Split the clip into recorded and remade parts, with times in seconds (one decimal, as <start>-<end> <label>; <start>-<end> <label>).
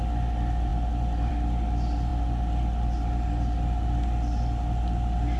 0.0-5.4 recorded